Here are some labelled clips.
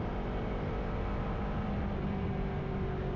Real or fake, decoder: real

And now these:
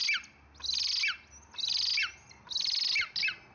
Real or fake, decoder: real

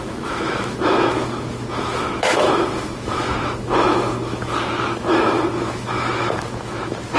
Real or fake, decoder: fake, autoencoder, DAC-VAE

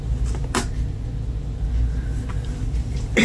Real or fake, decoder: real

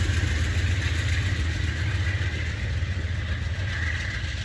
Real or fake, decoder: real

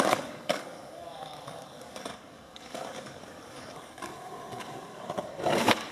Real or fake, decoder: fake, codec, DAC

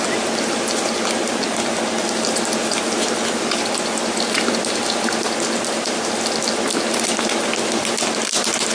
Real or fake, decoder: real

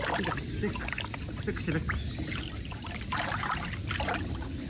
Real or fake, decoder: real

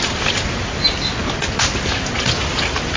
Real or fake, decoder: real